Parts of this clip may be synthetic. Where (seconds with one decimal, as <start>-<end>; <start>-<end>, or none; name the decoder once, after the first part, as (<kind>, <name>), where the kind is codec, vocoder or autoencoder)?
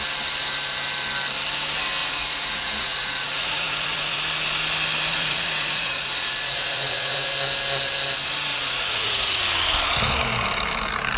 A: 2.0-4.2 (vocoder, Vocos); 5.1-7.3; 8.5-9.4